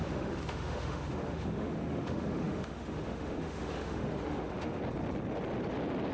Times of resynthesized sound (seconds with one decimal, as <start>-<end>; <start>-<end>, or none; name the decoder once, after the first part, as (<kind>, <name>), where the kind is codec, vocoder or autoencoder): 0.0-4.8 (autoencoder, DAC-VAE)